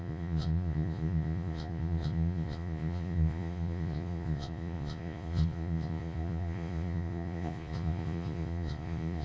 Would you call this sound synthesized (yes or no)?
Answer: yes